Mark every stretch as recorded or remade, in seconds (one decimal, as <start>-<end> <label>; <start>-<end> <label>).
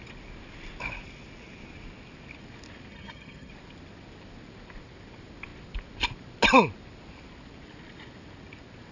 0.0-2.9 recorded; 2.9-3.5 remade; 3.5-8.9 recorded